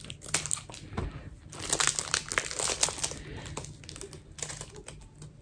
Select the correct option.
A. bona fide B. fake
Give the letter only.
A